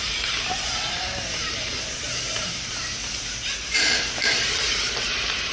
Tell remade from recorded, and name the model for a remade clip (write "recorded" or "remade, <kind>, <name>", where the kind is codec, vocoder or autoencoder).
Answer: remade, vocoder, BigVGAN v2